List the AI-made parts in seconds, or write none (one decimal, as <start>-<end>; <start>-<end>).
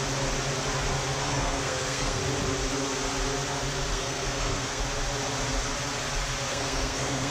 1.2-2.2; 3.9-4.8; 6.5-7.3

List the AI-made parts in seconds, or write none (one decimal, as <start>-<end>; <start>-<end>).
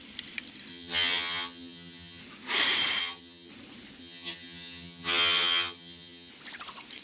0.7-2.2; 3.0-3.5; 4.0-6.3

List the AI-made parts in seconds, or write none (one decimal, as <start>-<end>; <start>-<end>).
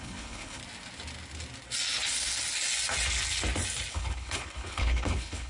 0.0-0.6; 3.9-5.5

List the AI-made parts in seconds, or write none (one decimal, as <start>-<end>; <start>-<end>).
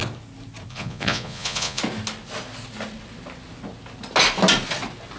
0.7-1.8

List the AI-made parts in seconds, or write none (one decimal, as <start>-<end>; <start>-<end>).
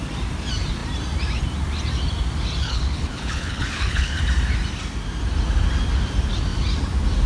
2.6-4.2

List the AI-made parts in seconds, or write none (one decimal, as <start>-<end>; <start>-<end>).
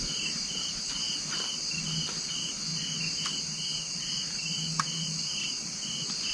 none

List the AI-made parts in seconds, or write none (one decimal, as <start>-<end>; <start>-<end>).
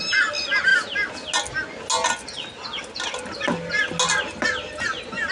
none